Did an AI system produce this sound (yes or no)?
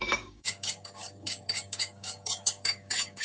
yes